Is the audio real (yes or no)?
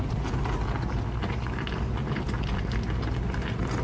yes